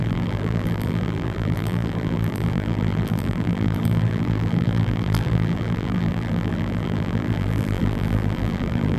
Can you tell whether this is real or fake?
fake